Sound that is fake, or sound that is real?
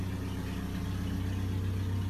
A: real